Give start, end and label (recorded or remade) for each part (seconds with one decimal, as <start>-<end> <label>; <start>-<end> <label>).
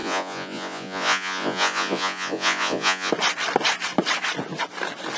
0.0-3.1 remade; 3.1-5.2 recorded